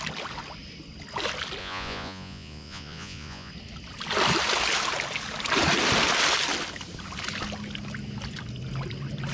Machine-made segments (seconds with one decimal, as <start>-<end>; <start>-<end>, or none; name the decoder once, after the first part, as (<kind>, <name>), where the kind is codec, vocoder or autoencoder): 1.6-3.5 (vocoder, Vocos)